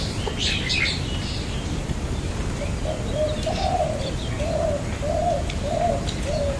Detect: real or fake real